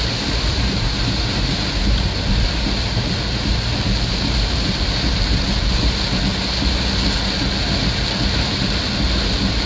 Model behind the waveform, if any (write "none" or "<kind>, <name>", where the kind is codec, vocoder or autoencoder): none